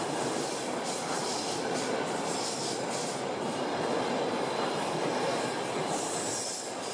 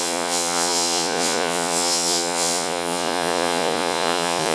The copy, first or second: second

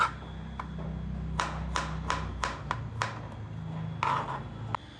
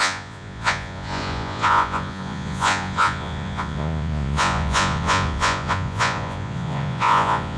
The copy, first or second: second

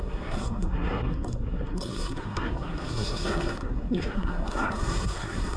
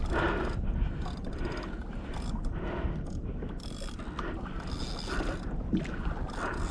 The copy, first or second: first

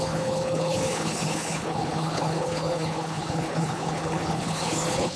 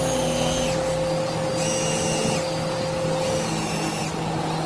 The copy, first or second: first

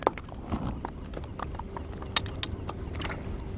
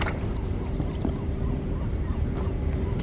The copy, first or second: second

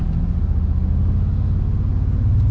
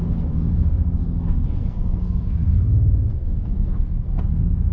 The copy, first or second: second